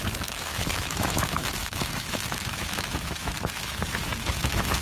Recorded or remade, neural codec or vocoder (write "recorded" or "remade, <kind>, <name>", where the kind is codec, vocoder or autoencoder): remade, autoencoder, DAC-VAE